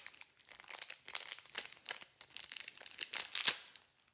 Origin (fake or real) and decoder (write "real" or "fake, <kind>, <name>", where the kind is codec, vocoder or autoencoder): real